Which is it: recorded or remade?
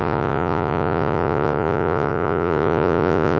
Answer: remade